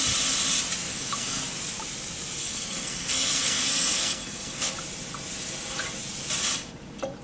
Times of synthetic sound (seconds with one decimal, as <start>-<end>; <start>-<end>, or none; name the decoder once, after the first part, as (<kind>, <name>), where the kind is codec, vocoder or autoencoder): 0.9-1.4 (codec, SNAC); 2.4-4.7